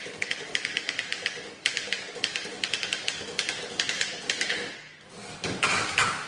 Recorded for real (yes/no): no